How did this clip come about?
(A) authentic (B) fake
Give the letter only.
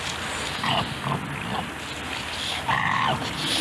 A